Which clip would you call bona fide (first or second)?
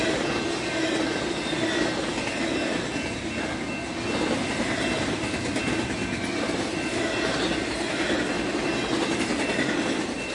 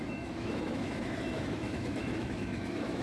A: first